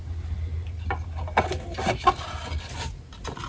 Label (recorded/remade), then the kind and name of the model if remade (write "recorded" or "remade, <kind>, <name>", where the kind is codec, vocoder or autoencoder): recorded